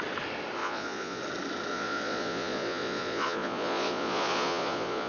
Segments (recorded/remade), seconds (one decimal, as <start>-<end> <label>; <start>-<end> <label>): 0.0-0.6 recorded; 0.6-1.2 remade; 1.2-1.7 recorded; 1.7-5.1 remade